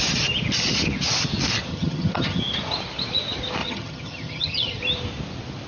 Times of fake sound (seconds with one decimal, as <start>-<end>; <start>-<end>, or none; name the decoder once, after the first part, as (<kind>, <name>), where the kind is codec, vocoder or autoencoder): 1.7-2.4 (vocoder, HiFi-GAN); 3.6-4.8